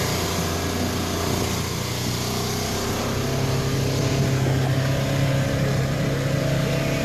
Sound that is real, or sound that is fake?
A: real